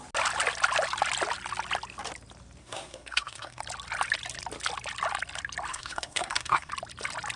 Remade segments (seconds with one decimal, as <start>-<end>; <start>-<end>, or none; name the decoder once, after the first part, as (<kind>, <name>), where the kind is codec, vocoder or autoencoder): 2.6-3.6 (codec, SNAC); 5.7-6.7